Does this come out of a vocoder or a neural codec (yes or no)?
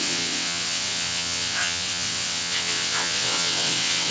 yes